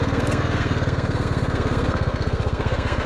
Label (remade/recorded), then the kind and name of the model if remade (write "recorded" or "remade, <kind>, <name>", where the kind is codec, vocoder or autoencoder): remade, codec, SNAC